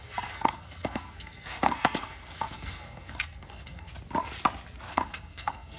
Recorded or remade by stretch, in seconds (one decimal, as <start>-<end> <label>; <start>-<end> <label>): 0.0-3.9 remade; 3.9-4.9 recorded; 4.9-5.8 remade